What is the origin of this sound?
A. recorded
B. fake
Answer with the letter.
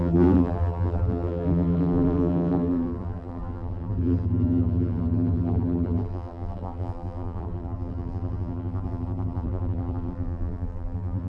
B